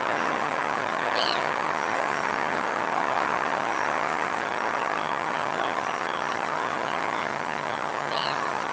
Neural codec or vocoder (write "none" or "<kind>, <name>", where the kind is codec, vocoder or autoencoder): vocoder, HiFi-GAN